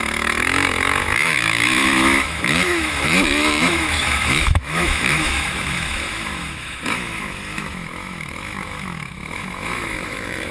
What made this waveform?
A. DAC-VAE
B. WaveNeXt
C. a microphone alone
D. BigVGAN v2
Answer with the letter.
A